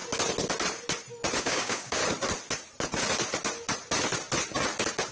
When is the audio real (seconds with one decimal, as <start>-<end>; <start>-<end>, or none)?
0.0-1.4; 2.0-5.1